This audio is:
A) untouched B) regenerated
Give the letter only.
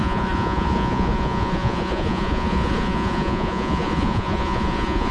B